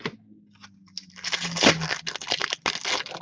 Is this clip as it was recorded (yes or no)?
yes